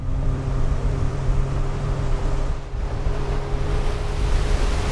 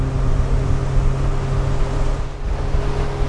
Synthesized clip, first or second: first